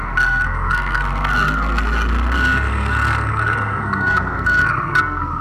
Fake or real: fake